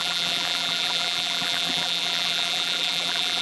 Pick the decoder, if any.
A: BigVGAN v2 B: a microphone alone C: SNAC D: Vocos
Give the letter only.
A